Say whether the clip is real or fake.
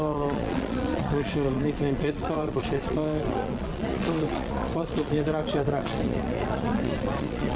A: fake